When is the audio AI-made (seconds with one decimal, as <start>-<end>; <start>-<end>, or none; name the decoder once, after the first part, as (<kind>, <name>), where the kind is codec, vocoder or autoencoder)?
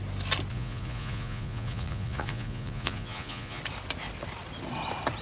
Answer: 0.5-3.6 (vocoder, Vocos)